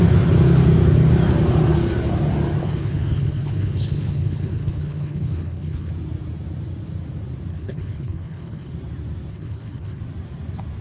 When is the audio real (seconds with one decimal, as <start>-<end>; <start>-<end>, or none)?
0.0-2.6; 5.9-7.5; 8.7-9.3; 10.0-10.8